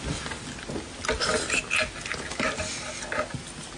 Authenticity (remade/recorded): recorded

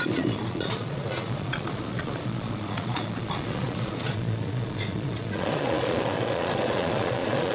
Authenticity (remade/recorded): remade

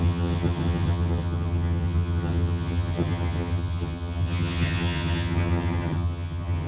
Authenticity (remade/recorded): remade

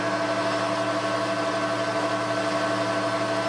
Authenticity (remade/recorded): recorded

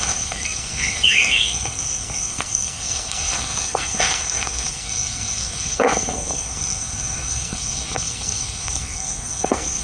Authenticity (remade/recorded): remade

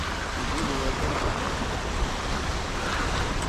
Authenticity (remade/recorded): recorded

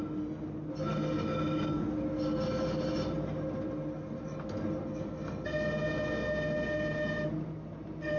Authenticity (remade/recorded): recorded